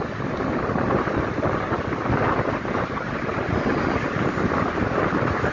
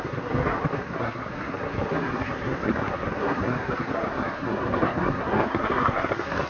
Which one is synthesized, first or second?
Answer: second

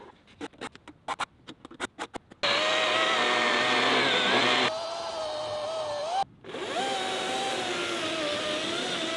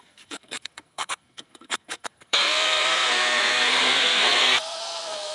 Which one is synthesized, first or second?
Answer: second